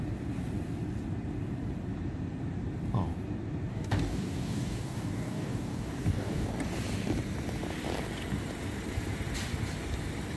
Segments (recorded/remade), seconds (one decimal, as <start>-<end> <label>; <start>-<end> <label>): 0.0-3.7 recorded; 3.7-6.5 remade; 6.5-10.4 recorded